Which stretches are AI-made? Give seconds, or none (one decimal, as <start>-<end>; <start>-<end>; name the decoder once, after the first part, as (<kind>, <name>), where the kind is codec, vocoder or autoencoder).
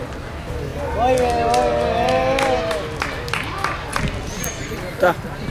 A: none